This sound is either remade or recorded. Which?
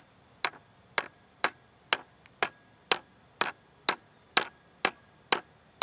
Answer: recorded